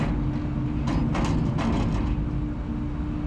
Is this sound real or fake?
real